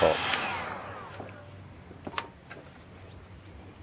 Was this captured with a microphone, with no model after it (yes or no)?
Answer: yes